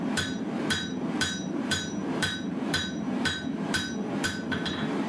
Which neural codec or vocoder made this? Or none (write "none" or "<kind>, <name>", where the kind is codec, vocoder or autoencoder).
vocoder, BigVGAN v2